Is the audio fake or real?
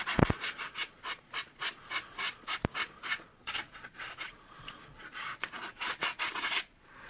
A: fake